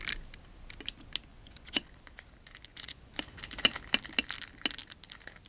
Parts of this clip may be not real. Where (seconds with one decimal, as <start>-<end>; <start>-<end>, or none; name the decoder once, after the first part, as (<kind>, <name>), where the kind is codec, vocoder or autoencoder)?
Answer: 1.3-2.3 (vocoder, Vocos); 2.7-3.4